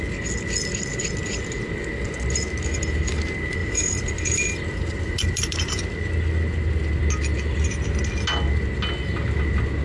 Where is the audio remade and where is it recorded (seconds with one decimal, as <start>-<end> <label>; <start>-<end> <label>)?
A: 0.0-3.6 recorded; 3.6-5.8 remade; 5.8-9.8 recorded